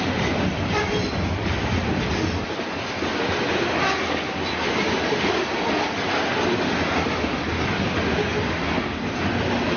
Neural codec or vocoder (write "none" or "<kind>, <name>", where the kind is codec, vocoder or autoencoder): none